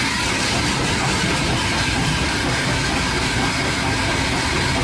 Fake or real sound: real